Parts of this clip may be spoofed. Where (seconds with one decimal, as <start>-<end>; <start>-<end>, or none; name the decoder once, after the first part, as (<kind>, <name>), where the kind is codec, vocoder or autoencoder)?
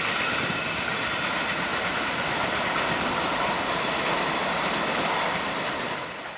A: none